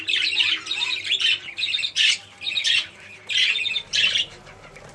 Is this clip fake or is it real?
fake